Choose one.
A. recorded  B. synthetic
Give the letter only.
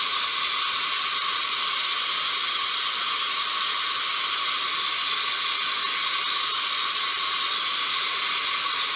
A